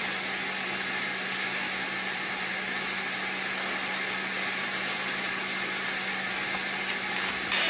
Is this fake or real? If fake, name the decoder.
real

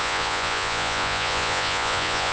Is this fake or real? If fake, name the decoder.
fake, vocoder, Vocos